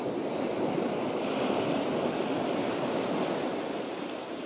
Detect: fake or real real